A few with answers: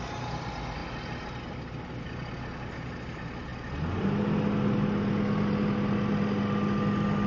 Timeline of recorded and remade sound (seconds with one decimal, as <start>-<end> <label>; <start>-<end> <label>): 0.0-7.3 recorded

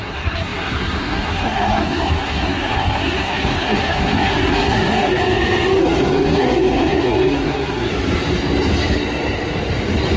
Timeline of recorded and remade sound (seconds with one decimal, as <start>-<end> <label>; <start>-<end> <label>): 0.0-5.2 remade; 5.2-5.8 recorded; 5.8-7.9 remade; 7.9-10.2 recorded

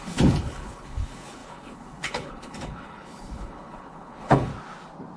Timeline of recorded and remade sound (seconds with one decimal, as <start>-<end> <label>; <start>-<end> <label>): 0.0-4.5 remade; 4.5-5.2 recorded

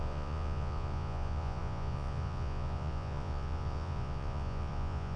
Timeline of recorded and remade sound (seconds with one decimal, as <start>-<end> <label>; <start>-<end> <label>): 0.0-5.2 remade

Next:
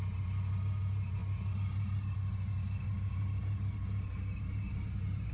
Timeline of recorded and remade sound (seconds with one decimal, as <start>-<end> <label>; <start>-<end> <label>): 0.0-5.3 recorded

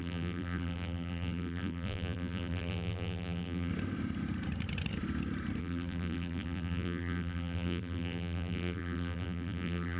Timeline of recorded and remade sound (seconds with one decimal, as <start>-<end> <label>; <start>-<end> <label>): 0.0-3.7 remade; 3.7-5.6 recorded; 5.6-10.0 remade